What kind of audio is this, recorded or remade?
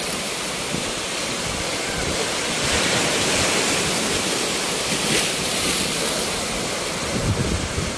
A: remade